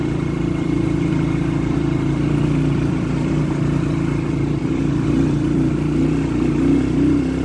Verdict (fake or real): fake